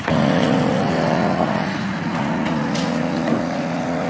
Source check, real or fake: fake